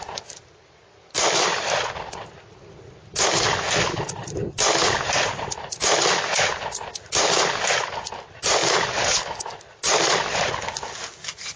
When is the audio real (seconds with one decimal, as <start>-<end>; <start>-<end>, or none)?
0.0-11.6